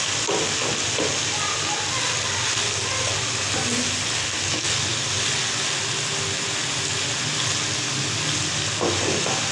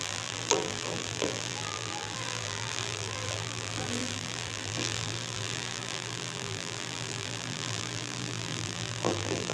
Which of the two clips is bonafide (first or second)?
first